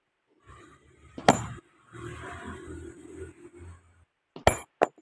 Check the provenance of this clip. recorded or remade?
recorded